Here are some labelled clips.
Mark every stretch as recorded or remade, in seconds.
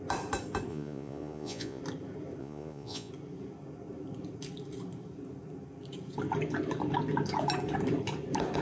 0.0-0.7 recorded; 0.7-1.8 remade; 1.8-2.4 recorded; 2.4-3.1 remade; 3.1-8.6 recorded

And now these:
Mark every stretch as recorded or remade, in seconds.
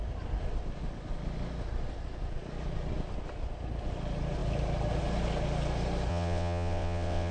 0.0-6.1 recorded; 6.1-7.3 remade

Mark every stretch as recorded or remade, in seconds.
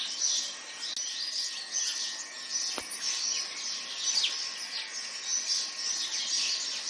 0.0-6.9 recorded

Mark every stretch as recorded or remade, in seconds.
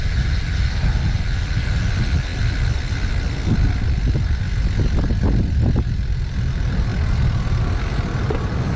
0.0-8.8 recorded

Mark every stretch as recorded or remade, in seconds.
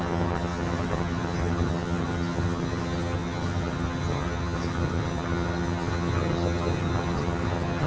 0.0-7.9 remade